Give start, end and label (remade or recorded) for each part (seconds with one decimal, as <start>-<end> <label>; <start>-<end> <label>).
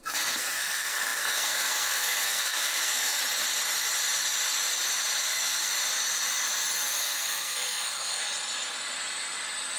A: 0.0-3.2 remade; 3.2-5.2 recorded; 5.2-5.7 remade; 5.7-7.0 recorded; 7.0-8.2 remade; 8.2-9.8 recorded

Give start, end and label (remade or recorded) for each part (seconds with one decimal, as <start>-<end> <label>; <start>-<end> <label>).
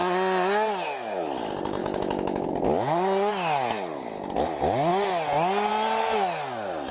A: 0.0-1.8 recorded; 1.8-2.5 remade; 2.5-6.9 recorded